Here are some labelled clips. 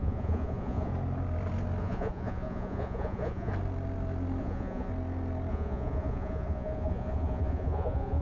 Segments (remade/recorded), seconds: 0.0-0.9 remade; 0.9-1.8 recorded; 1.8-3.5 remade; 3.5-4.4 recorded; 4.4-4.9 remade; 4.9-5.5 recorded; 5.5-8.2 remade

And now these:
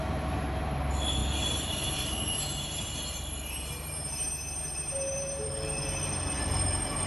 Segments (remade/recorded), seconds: 0.0-1.2 recorded; 1.2-5.5 remade; 5.5-7.1 recorded

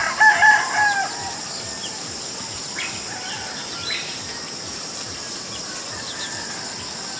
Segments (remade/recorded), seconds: 0.0-1.8 recorded; 1.8-5.7 remade; 5.7-7.2 recorded

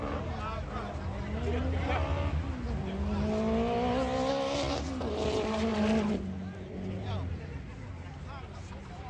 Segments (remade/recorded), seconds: 0.0-9.1 recorded

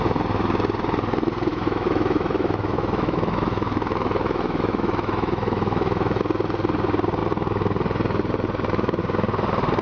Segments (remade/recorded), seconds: 0.0-1.5 recorded; 1.5-6.2 remade; 6.2-9.8 recorded

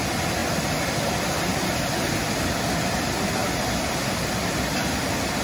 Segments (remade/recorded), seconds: 0.0-5.4 recorded

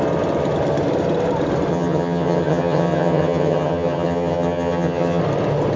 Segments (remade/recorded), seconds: 0.0-1.7 recorded; 1.7-5.2 remade; 5.2-5.8 recorded

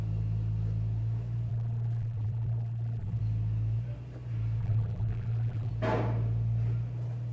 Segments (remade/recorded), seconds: 0.0-1.5 recorded; 1.5-3.2 remade; 3.2-4.6 recorded; 4.6-5.7 remade; 5.7-7.3 recorded